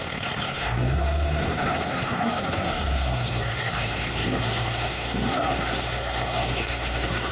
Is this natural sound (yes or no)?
no